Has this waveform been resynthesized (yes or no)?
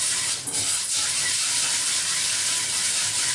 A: no